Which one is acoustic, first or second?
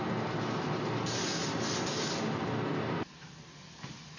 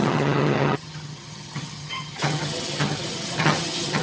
first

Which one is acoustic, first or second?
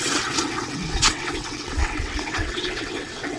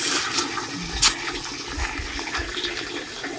second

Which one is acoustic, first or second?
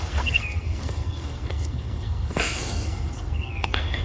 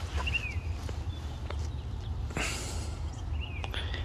second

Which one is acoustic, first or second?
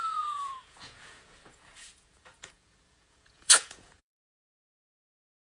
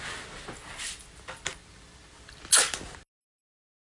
second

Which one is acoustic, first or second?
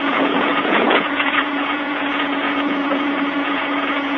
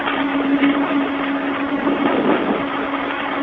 second